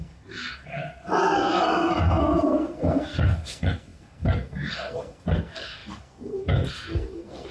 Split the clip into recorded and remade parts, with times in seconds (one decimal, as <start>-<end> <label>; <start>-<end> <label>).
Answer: 0.0-7.5 remade